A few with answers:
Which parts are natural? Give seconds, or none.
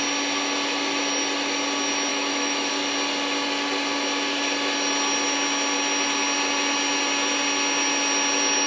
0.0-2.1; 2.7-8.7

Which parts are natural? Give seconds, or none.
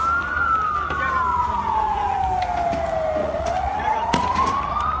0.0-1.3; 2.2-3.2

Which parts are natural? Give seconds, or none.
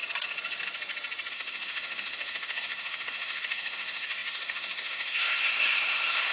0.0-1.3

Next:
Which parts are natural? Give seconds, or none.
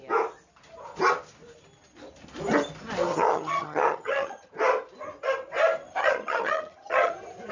0.0-3.1; 4.5-6.0; 7.1-7.5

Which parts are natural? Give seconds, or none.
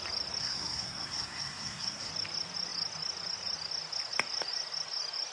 0.0-0.4; 2.1-5.3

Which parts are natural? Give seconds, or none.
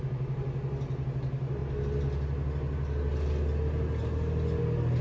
0.0-5.0